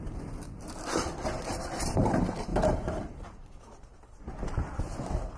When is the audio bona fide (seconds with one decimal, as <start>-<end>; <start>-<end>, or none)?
0.0-2.5; 4.2-5.4

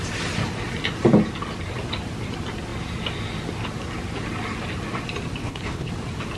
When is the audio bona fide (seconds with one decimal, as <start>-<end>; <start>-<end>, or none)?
0.0-5.4; 5.9-6.4

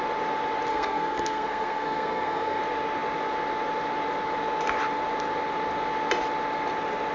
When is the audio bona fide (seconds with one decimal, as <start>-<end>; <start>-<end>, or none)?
0.0-0.7; 2.6-7.1